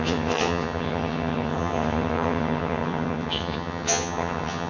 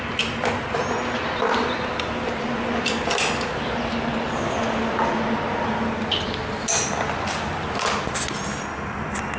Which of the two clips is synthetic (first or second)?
first